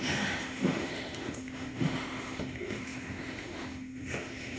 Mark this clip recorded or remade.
remade